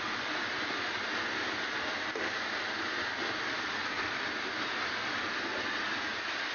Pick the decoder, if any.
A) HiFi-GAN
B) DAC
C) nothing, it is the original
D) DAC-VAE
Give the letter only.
C